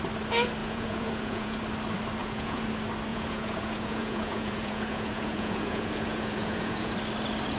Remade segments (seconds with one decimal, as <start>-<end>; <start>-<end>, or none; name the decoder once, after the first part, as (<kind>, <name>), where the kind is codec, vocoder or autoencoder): 0.6-1.6 (vocoder, Vocos); 2.2-2.7; 3.1-6.9